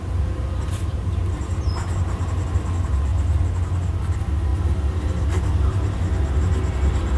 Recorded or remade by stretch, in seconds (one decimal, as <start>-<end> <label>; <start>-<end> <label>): 0.0-7.2 recorded